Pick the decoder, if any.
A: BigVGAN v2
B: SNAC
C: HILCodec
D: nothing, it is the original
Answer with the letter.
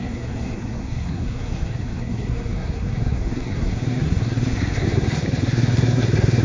B